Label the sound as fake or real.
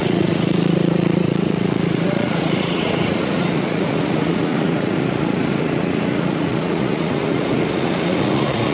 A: fake